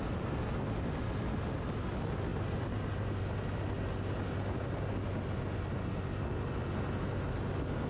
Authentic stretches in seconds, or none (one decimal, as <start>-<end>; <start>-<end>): 0.0-7.9